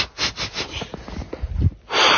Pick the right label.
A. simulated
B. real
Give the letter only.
B